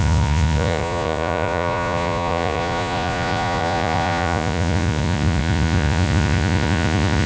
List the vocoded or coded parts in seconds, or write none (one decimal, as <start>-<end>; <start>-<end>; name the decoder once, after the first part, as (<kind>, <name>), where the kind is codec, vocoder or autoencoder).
0.0-7.3 (vocoder, Vocos)